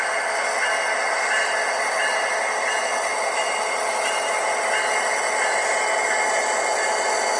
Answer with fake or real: real